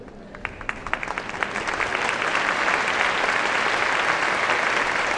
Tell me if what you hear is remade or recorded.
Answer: recorded